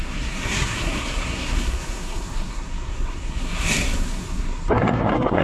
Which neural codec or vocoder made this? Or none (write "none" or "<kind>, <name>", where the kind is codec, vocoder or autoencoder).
codec, SNAC